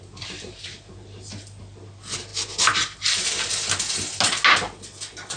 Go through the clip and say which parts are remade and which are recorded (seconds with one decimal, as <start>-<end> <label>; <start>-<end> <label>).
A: 0.0-5.4 recorded